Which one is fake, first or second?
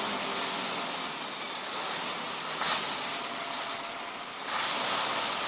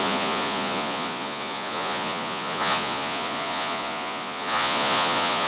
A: second